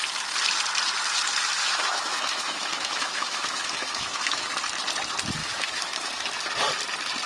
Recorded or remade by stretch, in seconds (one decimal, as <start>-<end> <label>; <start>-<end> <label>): 0.0-1.6 recorded; 1.6-4.5 remade; 4.5-5.4 recorded; 5.4-6.1 remade; 6.1-7.3 recorded